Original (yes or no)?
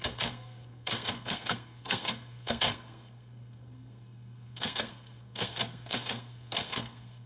no